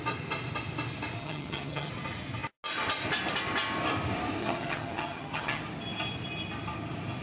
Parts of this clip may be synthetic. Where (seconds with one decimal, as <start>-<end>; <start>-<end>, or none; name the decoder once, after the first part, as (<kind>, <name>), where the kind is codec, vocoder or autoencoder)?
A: 1.2-1.9 (vocoder, HiFi-GAN); 4.4-5.6